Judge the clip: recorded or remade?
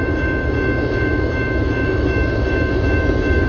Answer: remade